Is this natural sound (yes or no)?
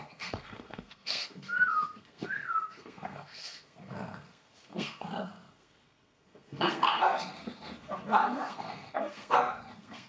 no